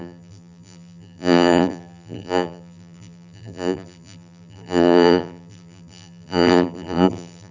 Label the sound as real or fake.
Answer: fake